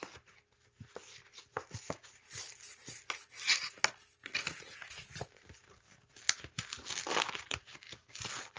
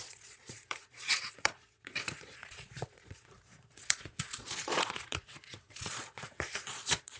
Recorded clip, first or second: first